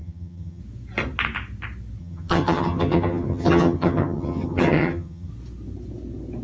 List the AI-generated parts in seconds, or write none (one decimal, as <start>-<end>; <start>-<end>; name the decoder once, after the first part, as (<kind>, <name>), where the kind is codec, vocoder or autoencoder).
0.0-0.6 (vocoder, HiFi-GAN); 2.0-5.3